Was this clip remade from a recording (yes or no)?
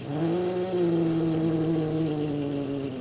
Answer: no